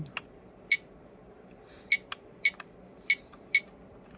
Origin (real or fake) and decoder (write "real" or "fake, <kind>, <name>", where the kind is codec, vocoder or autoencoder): real